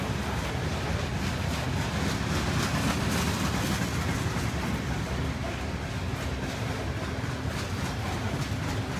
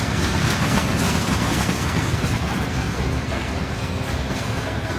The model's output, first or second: second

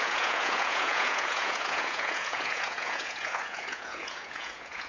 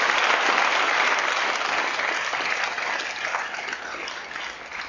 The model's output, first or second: first